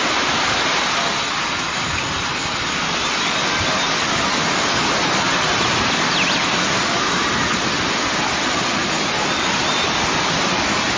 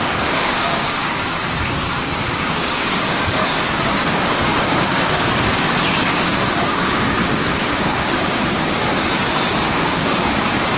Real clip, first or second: first